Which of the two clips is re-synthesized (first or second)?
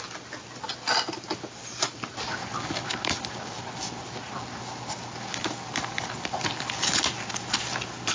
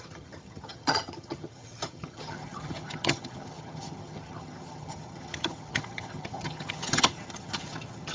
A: second